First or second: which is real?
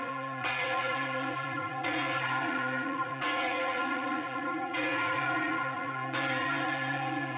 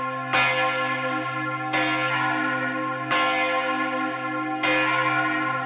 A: second